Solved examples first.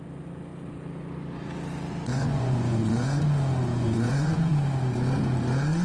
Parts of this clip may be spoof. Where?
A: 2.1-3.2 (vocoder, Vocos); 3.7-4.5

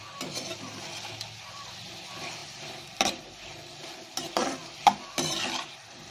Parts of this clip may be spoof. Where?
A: 2.4-6.1 (vocoder, BigVGAN v2)

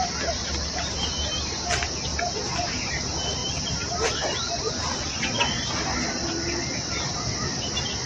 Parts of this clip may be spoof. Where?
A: none

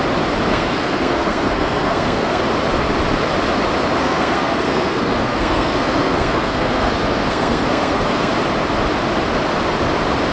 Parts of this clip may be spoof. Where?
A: 0.5-2.4 (codec, SNAC); 4.0-8.3

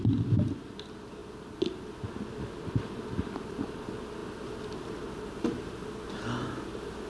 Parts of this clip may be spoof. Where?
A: none

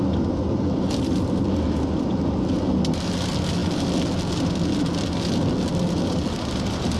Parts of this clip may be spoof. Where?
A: none

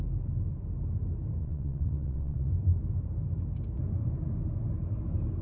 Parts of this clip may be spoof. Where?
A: 1.4-2.5 (vocoder, WaveNeXt)